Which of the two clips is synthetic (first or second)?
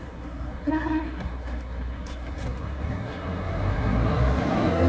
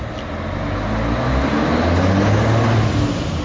first